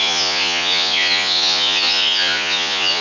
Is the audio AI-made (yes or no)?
yes